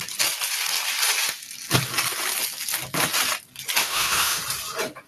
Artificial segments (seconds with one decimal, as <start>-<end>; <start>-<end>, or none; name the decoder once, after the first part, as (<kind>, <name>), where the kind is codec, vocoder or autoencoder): 3.8-4.4 (autoencoder, DAC-VAE)